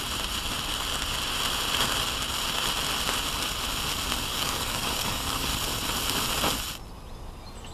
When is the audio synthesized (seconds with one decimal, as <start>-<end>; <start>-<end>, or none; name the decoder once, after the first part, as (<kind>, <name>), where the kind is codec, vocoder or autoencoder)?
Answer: 4.3-5.5 (codec, DAC)